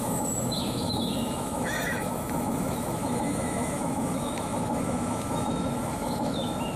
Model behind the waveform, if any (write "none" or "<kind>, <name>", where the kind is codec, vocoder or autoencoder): autoencoder, DAC-VAE